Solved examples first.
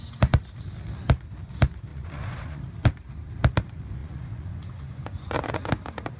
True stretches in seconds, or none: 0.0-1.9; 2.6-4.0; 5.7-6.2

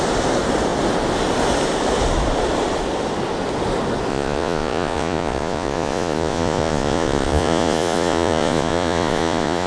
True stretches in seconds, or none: 0.0-4.1

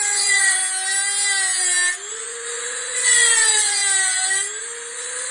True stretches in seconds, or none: 0.6-2.1; 3.8-4.6

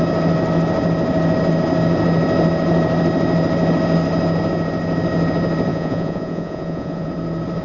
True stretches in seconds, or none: 0.0-5.7; 7.1-7.6

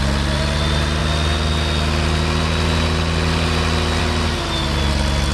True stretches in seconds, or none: 0.0-5.3

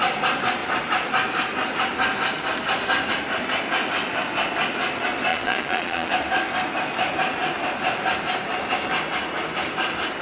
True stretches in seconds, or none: 0.0-5.3; 6.1-10.2

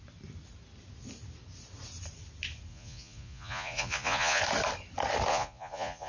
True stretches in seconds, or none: 0.0-2.7; 4.4-5.3

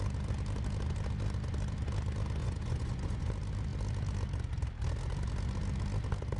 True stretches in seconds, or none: 0.0-2.4; 3.3-6.4